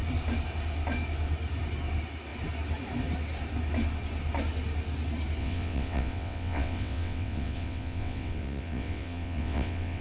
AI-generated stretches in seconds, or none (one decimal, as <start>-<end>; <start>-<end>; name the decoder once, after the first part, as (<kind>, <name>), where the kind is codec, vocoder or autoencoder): 5.4-10.0 (vocoder, WaveNeXt)